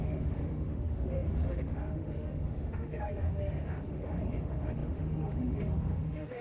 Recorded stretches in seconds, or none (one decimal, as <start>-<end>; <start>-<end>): none